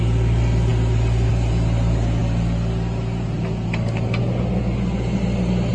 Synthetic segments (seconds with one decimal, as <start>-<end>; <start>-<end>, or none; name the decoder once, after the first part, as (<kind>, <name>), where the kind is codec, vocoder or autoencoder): none